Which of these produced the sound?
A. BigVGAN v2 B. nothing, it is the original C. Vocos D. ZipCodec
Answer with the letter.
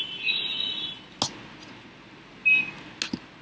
B